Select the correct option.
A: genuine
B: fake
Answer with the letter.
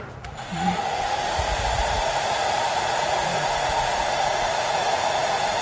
B